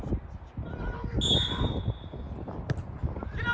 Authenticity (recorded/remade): recorded